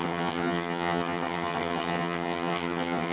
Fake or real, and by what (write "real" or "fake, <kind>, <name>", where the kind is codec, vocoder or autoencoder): fake, vocoder, HiFi-GAN